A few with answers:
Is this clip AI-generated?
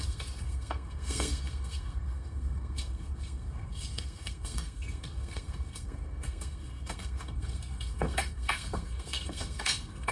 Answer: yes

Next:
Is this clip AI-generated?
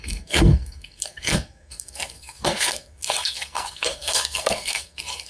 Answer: yes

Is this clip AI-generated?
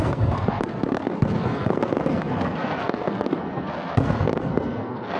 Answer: yes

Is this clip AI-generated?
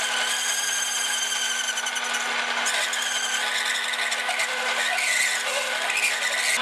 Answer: no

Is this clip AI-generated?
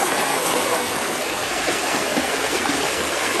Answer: yes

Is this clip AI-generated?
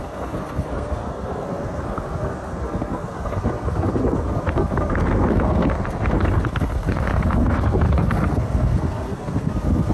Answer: yes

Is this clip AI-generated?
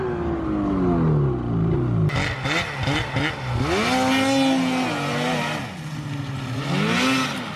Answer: no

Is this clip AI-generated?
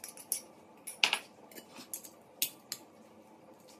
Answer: no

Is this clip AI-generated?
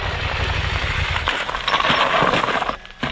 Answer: no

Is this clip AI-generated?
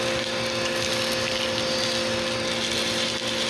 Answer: no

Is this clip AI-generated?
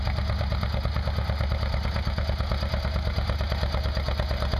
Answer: no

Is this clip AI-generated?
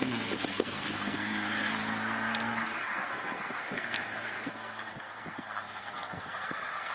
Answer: yes